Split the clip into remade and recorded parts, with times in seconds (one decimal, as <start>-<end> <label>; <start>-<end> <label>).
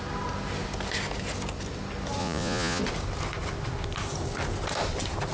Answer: 0.0-2.2 recorded; 2.2-2.8 remade; 2.8-5.3 recorded